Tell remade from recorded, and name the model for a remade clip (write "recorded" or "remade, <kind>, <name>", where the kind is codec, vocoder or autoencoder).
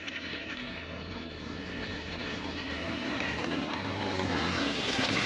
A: remade, codec, SNAC